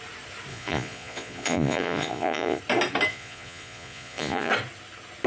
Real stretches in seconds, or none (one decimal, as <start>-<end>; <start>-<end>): 0.0-0.5; 2.6-3.1; 4.5-5.3